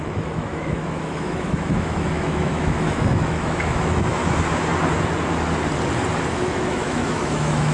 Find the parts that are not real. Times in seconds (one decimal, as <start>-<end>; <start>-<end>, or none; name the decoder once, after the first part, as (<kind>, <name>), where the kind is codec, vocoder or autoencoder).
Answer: 0.0-4.2 (autoencoder, DAC-VAE); 6.3-7.7